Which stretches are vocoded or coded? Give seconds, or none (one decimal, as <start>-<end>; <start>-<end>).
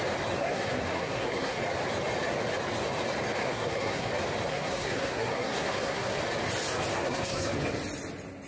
0.4-1.6; 3.4-4.1; 4.5-6.2; 6.9-7.5